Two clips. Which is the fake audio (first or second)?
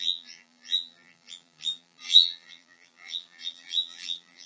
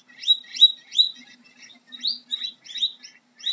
first